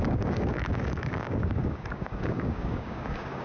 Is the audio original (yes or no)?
no